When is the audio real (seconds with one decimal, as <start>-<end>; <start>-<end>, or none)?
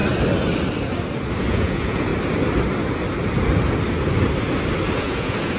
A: 0.0-1.4; 2.1-5.0